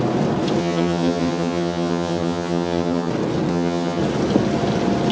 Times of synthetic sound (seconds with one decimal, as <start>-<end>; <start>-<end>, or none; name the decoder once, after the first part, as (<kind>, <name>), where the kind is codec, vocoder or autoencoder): 0.6-3.1 (vocoder, HiFi-GAN); 3.5-4.0